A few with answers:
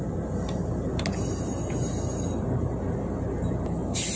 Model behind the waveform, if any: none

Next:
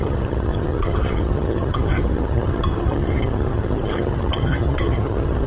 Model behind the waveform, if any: vocoder, HiFi-GAN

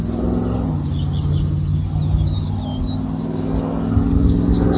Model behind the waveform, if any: none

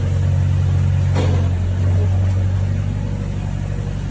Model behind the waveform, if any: none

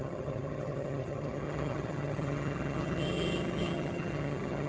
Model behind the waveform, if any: vocoder, HiFi-GAN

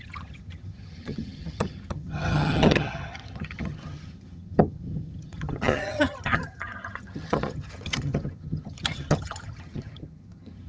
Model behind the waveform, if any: vocoder, HiFi-GAN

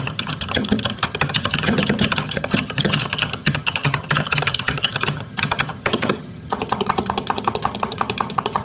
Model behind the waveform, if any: vocoder, HiFi-GAN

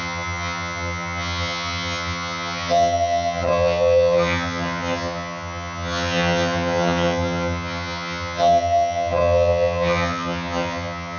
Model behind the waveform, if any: vocoder, HiFi-GAN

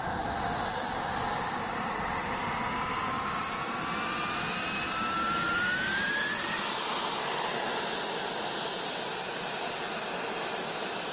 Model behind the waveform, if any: none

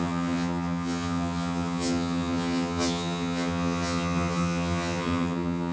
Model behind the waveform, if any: vocoder, HiFi-GAN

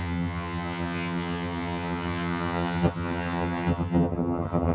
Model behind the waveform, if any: vocoder, HiFi-GAN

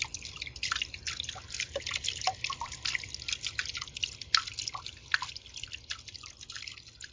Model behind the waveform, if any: none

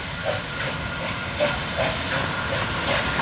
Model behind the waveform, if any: none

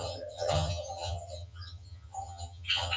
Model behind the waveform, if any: vocoder, HiFi-GAN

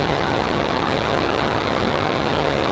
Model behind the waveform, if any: vocoder, HiFi-GAN